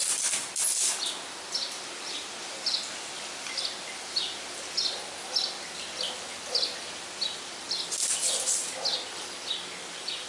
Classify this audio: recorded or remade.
recorded